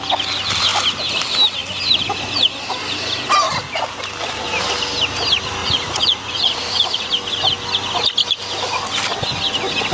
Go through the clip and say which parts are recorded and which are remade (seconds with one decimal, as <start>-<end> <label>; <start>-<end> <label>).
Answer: 0.0-5.6 recorded; 5.6-7.1 remade; 7.1-9.9 recorded